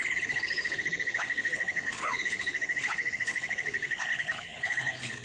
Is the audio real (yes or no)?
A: no